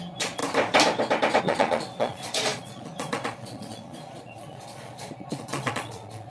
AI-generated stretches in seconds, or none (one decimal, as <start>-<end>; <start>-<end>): 0.0-0.4; 1.4-6.3